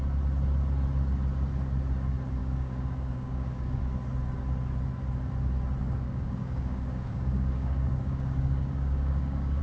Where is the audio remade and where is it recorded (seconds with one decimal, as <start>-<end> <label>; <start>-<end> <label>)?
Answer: 0.0-2.4 recorded; 2.4-3.8 remade; 3.8-5.8 recorded; 5.8-9.6 remade